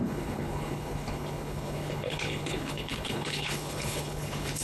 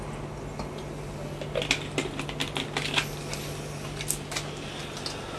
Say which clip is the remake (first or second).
first